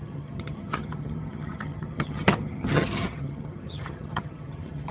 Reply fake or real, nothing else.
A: fake